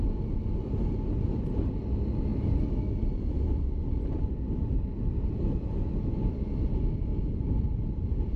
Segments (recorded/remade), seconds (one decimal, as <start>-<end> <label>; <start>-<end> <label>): 0.0-2.3 remade; 2.3-5.3 recorded; 5.3-5.7 remade; 5.7-6.3 recorded; 6.3-7.1 remade; 7.1-7.9 recorded; 7.9-8.4 remade